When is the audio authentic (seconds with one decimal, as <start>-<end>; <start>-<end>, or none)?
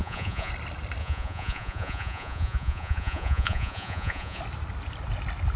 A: 0.5-1.0; 4.4-5.6